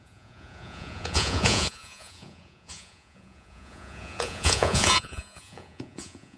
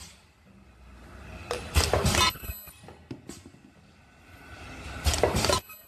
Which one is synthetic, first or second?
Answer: first